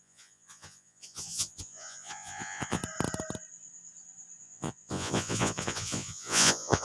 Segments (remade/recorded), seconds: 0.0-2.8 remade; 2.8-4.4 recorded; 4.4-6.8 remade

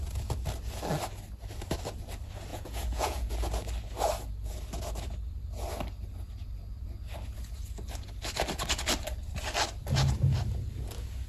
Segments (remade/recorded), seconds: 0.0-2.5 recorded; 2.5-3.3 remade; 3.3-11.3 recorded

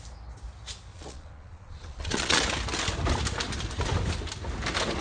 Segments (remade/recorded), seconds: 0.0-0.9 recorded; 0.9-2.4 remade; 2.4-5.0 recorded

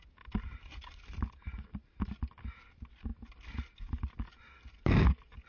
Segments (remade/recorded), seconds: 0.0-5.5 recorded

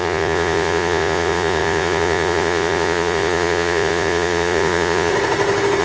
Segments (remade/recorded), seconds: 0.0-5.1 remade; 5.1-5.8 recorded